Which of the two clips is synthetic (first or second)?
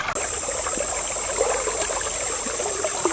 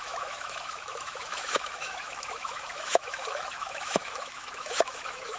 second